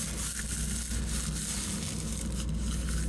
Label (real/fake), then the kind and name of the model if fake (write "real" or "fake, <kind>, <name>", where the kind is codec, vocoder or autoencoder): real